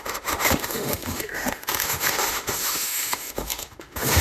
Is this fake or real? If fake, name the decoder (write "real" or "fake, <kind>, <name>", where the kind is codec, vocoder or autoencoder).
fake, autoencoder, DAC-VAE